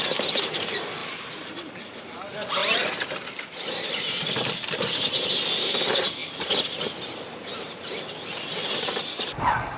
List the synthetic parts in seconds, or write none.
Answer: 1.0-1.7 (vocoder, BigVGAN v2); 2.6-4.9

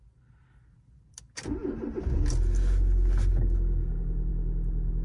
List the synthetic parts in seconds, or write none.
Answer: none

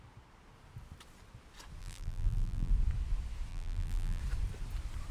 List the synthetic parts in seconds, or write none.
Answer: 1.8-2.7 (vocoder, BigVGAN v2); 3.5-4.2

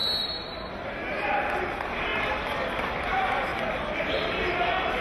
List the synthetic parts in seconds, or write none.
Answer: 3.5-4.5 (vocoder, BigVGAN v2)

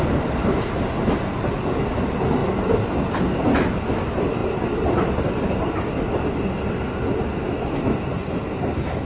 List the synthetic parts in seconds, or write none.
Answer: none

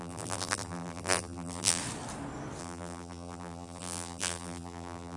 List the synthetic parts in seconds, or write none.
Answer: 0.0-1.8 (vocoder, BigVGAN v2); 2.6-5.2